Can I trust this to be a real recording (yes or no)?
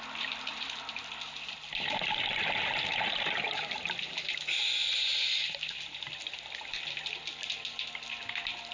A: yes